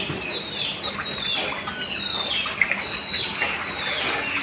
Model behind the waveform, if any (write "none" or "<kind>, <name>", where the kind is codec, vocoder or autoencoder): none